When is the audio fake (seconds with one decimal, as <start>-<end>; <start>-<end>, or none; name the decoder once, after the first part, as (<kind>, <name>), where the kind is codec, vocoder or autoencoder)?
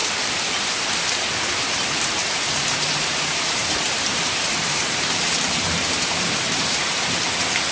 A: 2.2-6.8 (vocoder, BigVGAN v2)